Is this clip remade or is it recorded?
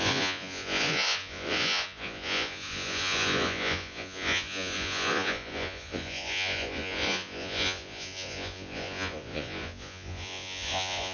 remade